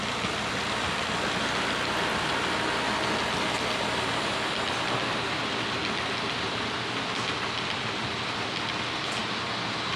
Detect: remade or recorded recorded